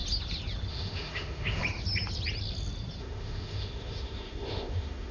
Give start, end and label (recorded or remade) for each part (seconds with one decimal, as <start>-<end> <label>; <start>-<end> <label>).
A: 0.0-0.7 recorded; 0.7-1.6 remade; 1.6-3.0 recorded; 3.0-5.1 remade